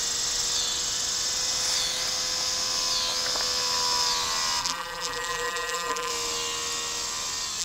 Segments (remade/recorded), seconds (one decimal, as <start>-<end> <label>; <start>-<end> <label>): 0.0-4.6 recorded; 4.6-6.1 remade; 6.1-7.6 recorded